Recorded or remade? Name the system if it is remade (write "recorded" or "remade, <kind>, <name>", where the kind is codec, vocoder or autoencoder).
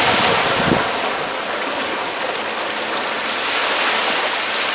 recorded